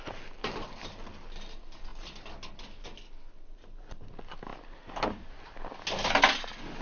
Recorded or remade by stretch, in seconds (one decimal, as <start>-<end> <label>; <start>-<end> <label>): 0.0-6.8 recorded